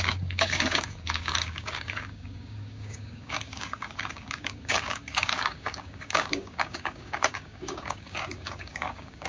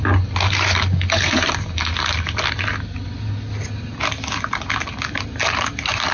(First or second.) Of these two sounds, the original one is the second